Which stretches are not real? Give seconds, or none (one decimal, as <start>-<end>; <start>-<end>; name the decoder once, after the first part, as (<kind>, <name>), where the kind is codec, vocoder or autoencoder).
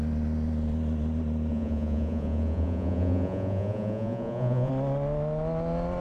1.5-4.7 (vocoder, Vocos)